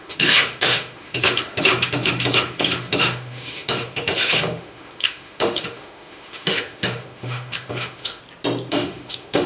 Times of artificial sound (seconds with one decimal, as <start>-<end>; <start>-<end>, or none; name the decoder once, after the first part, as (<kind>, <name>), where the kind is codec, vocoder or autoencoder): 0.0-8.2 (autoencoder, DAC-VAE); 8.7-9.5

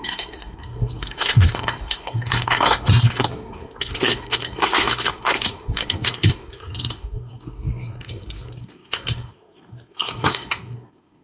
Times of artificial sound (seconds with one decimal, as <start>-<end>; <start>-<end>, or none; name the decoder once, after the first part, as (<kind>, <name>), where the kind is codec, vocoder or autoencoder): 0.0-11.2 (codec, SNAC)

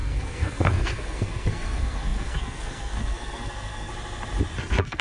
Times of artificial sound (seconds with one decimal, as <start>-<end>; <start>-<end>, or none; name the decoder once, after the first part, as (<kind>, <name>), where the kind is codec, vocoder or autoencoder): 0.0-3.9 (codec, SNAC); 4.6-5.0

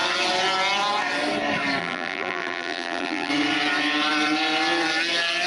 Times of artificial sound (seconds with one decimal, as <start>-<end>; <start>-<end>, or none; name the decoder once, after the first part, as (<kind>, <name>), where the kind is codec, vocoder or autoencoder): 1.8-3.3 (vocoder, BigVGAN v2)

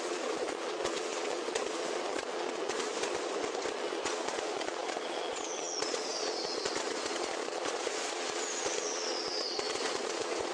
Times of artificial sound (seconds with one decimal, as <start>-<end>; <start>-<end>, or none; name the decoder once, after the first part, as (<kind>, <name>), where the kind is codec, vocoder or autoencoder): 0.0-2.9 (vocoder, Vocos); 3.7-10.5